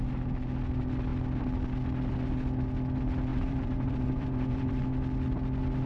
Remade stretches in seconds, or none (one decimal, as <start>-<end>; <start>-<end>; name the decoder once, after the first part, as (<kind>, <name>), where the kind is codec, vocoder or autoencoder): 3.3-4.8 (vocoder, BigVGAN v2)